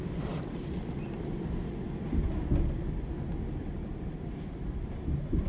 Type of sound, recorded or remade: recorded